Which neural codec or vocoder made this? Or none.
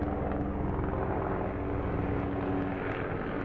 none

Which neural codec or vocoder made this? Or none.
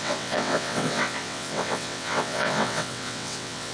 vocoder, WaveNeXt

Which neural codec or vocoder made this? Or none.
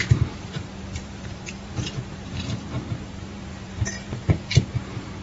vocoder, BigVGAN v2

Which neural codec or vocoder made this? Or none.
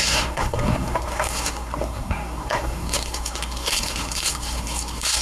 codec, SNAC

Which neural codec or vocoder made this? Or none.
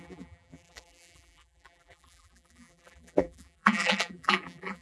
vocoder, BigVGAN v2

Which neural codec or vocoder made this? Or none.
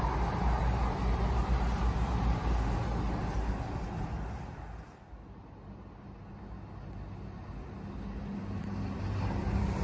none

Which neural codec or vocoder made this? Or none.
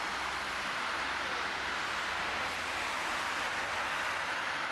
none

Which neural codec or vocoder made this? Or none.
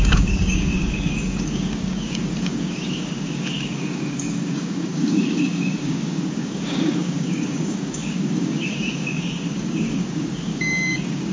codec, DAC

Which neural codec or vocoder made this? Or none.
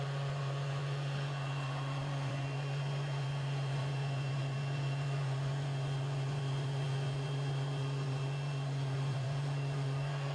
vocoder, Vocos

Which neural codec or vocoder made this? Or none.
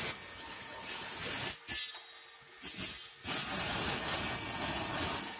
none